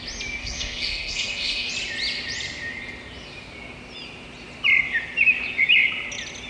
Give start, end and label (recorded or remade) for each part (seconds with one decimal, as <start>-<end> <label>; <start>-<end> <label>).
0.0-0.4 recorded; 0.4-1.7 remade; 1.7-6.5 recorded

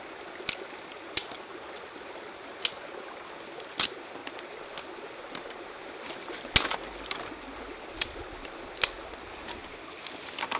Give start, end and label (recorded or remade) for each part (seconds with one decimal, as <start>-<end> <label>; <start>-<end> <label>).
0.0-10.6 recorded

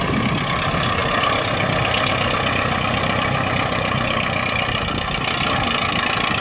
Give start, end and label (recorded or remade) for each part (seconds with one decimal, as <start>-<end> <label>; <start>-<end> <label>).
0.0-6.4 recorded

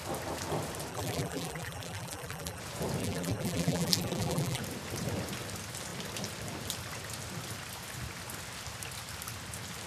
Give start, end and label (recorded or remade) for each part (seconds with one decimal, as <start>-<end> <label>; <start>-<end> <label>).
0.0-0.9 recorded; 0.9-2.6 remade; 2.6-3.0 recorded; 3.0-4.6 remade; 4.6-9.9 recorded

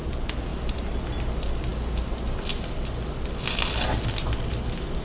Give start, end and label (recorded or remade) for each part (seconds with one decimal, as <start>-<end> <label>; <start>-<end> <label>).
0.0-5.0 recorded

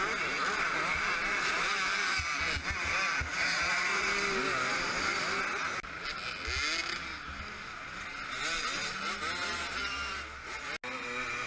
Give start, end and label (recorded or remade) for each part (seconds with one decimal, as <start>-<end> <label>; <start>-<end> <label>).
0.0-3.3 recorded; 3.3-4.1 remade; 4.1-11.5 recorded

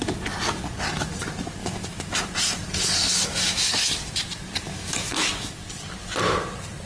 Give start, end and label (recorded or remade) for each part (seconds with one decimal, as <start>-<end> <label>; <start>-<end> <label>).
0.0-1.6 recorded; 1.6-2.2 remade; 2.2-3.3 recorded; 3.3-3.9 remade; 3.9-4.7 recorded; 4.7-5.5 remade; 5.5-6.9 recorded